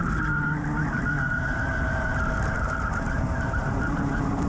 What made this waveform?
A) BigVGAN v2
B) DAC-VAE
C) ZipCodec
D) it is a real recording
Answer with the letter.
A